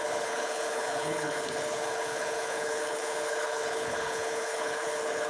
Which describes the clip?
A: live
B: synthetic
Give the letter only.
B